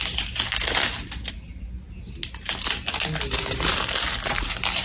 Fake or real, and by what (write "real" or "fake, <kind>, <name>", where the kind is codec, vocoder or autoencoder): real